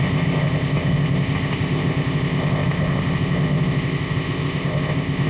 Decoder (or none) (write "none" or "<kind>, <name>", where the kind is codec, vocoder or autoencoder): codec, ZipCodec